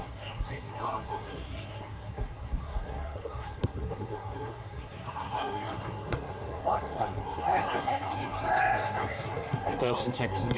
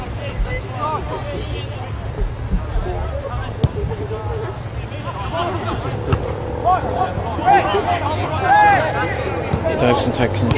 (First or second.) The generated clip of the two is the first